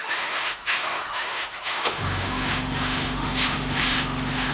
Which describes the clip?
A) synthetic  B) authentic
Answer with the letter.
A